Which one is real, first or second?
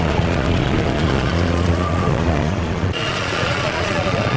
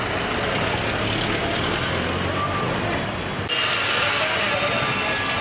second